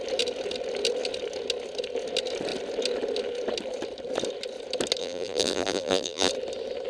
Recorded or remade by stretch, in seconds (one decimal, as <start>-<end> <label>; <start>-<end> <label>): 0.0-5.0 recorded; 5.0-6.3 remade; 6.3-6.9 recorded